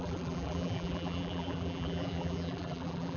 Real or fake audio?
fake